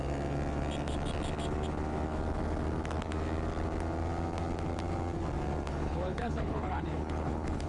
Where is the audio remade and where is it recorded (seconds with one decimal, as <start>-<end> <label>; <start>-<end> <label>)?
0.0-5.7 recorded; 5.7-7.7 remade